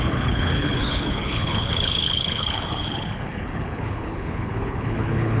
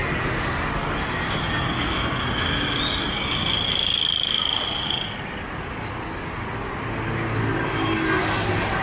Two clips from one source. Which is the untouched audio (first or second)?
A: second